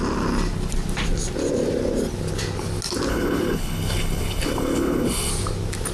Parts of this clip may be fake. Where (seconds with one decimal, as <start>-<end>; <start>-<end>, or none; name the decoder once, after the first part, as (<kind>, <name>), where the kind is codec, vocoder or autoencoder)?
3.1-5.3 (codec, HILCodec)